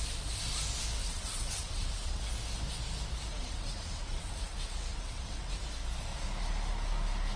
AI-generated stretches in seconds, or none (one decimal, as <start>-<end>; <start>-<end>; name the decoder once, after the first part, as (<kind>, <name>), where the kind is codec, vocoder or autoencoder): 1.0-2.2 (vocoder, WaveNeXt); 3.3-5.6